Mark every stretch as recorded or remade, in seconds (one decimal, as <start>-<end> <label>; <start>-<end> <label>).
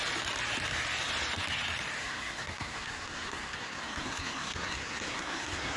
0.0-2.0 recorded; 2.0-5.8 remade